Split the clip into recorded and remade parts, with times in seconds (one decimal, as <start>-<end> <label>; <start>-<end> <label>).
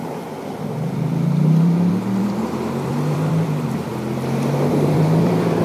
0.0-3.9 remade; 3.9-4.7 recorded; 4.7-5.6 remade